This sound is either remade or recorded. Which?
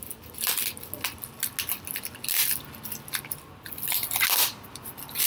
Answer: recorded